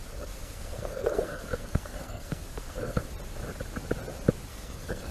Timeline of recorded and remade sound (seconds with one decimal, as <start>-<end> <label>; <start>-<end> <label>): 0.0-3.1 remade; 3.1-4.5 recorded; 4.5-5.1 remade